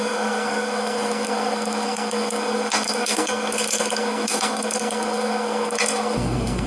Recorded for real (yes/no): no